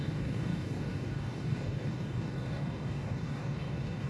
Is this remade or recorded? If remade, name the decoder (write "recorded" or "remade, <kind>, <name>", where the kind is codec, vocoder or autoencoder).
remade, codec, DAC